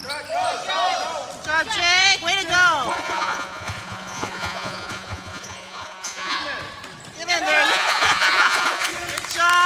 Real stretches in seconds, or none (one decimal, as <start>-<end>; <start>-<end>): 0.0-2.9; 6.4-7.7; 8.9-9.7